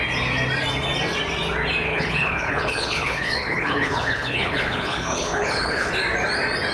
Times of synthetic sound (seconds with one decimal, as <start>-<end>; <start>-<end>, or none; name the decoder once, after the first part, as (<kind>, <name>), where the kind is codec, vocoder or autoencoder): 1.9-5.9 (codec, HILCodec)